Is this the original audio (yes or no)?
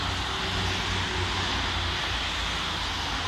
yes